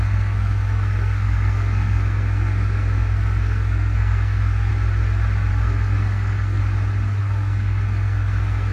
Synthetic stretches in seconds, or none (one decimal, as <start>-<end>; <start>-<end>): 0.0-4.7; 5.5-6.6; 7.2-8.7